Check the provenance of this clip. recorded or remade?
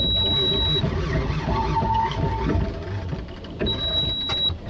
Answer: recorded